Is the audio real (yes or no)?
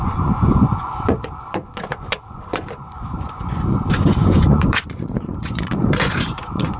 no